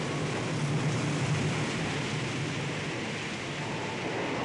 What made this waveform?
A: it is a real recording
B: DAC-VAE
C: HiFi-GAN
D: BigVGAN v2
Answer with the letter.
D